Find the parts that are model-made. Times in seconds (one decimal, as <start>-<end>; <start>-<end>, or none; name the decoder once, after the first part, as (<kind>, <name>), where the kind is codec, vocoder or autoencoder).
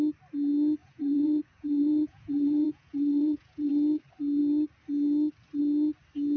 0.8-3.7 (vocoder, Vocos)